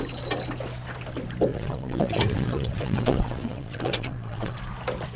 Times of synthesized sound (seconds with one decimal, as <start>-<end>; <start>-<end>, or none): 1.5-4.6